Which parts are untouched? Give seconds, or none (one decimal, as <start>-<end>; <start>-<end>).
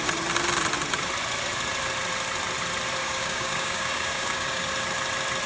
0.0-3.0; 4.7-5.5